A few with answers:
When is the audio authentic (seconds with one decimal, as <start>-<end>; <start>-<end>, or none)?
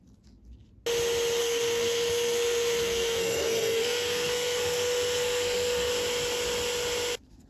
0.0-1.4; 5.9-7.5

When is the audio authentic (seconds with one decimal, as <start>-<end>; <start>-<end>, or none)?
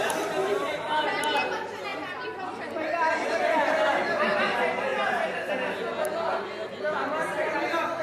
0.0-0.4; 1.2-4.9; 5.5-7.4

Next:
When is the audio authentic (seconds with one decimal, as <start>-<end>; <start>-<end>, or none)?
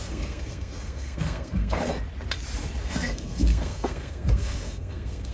1.9-2.8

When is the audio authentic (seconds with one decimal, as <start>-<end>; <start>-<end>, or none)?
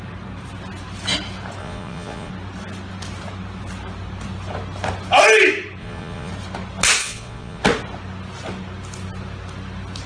0.0-1.6; 2.3-5.8; 6.3-7.0; 7.6-10.1